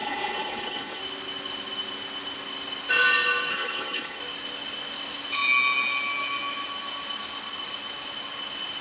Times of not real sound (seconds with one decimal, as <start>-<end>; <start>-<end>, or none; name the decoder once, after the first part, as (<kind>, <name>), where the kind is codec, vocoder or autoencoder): 0.0-1.0 (codec, HILCodec); 3.5-4.2